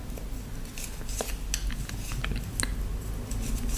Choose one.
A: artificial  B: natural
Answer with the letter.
B